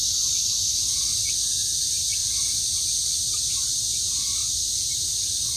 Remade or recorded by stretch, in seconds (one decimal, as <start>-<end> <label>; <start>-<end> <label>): 0.0-1.8 recorded; 1.8-2.2 remade; 2.2-3.5 recorded; 3.5-4.4 remade; 4.4-5.6 recorded